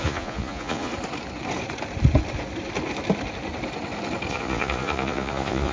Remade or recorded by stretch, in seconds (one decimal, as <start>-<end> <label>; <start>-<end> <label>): 0.0-0.9 remade; 0.9-4.3 recorded; 4.3-5.7 remade